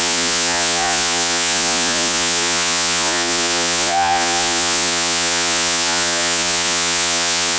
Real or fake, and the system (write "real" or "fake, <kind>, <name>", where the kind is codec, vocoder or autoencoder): fake, vocoder, Vocos